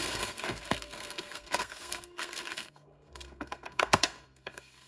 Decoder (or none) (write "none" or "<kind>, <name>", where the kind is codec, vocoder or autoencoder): codec, SNAC